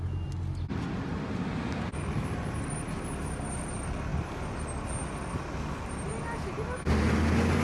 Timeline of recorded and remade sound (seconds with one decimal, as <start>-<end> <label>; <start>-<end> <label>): 0.0-7.6 recorded